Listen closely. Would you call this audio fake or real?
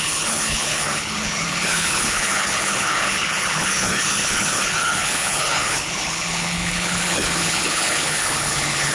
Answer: fake